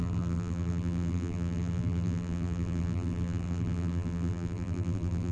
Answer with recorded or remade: remade